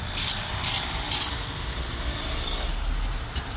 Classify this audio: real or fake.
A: real